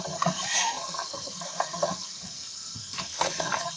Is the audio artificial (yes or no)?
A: yes